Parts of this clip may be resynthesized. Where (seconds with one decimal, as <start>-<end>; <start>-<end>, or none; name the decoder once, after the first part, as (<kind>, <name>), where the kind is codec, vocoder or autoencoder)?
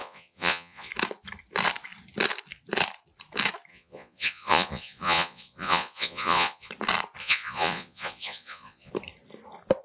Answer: 0.0-0.9 (vocoder, Vocos); 3.7-6.7; 7.2-8.9